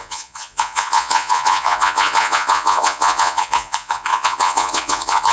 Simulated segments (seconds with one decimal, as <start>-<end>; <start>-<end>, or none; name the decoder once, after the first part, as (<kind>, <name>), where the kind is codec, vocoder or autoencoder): 0.0-5.3 (vocoder, Vocos)